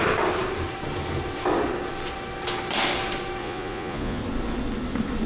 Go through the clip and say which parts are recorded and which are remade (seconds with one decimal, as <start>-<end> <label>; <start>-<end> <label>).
0.0-3.4 recorded; 3.4-4.2 remade; 4.2-5.3 recorded